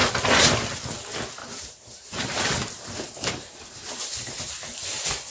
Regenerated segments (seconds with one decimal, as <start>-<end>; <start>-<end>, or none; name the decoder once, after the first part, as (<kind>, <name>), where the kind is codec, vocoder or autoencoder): 1.4-4.5 (vocoder, BigVGAN v2)